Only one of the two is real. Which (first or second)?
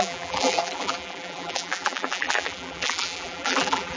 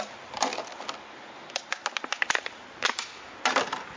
second